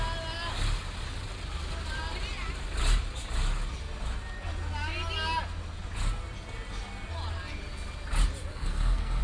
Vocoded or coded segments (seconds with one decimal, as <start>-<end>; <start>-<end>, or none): 8.5-9.2